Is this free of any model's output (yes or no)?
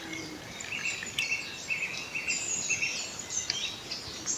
yes